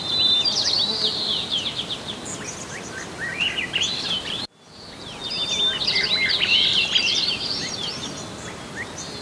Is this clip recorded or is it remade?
remade